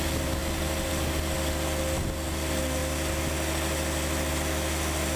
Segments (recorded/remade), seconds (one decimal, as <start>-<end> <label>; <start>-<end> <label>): 0.0-5.2 recorded